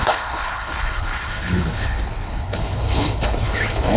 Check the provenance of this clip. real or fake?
fake